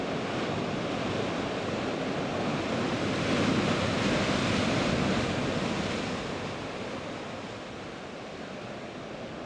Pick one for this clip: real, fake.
real